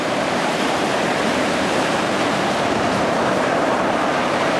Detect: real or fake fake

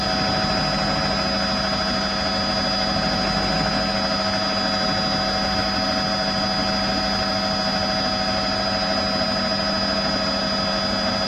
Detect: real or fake real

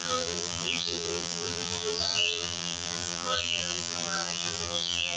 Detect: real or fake fake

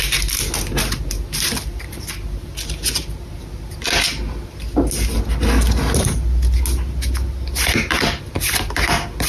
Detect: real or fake real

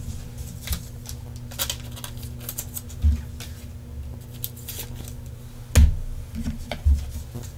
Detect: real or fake real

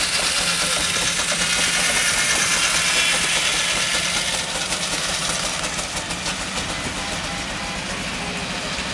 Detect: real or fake real